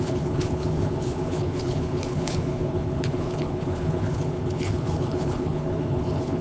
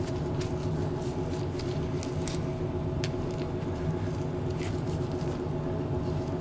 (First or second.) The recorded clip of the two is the second